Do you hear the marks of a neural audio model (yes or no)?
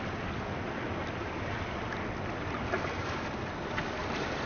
no